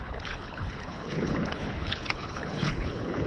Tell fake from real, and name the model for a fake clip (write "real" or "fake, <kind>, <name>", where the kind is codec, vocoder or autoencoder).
fake, codec, HILCodec